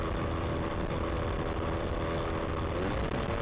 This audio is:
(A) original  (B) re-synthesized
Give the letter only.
A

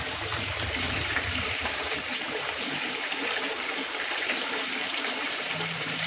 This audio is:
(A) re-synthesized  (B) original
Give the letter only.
A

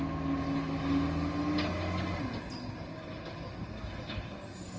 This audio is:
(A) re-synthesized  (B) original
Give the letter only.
B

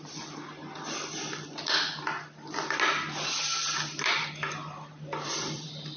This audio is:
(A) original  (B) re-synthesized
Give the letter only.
B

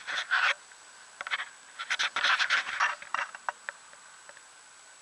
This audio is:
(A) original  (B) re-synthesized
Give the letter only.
A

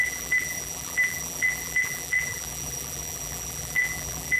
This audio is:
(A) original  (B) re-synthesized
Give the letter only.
B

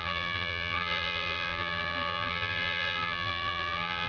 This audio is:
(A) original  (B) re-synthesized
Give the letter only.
B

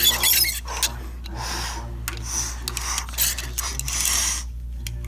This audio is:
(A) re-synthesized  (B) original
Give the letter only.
B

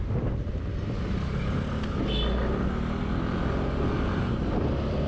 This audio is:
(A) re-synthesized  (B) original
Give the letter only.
B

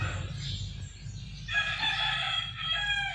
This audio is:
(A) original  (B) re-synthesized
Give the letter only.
B